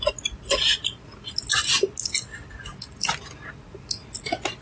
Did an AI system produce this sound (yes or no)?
no